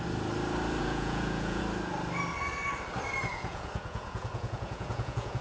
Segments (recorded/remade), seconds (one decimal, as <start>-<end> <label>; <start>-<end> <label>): 0.0-0.8 recorded; 0.8-1.6 remade; 1.6-3.3 recorded; 3.3-5.4 remade